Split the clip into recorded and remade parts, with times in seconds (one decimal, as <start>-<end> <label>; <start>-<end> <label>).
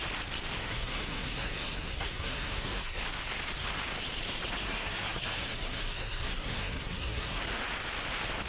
0.0-0.6 recorded; 0.6-3.0 remade; 3.0-4.6 recorded; 4.6-7.4 remade; 7.4-8.5 recorded